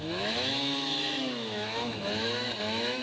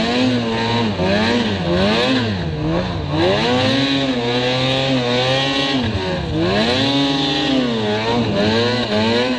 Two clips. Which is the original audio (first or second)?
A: second